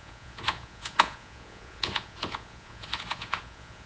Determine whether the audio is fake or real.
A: fake